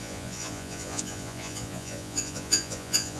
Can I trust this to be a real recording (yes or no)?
no